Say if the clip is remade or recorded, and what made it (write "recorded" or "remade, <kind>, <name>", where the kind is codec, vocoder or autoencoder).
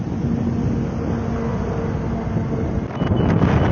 recorded